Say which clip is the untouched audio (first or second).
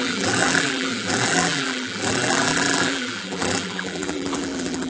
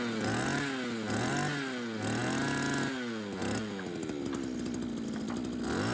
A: second